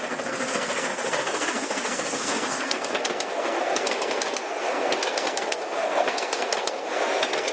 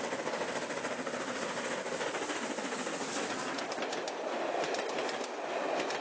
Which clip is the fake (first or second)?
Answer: first